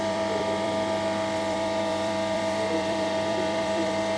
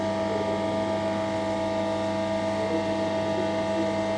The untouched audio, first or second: second